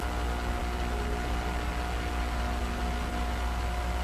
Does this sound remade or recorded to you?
recorded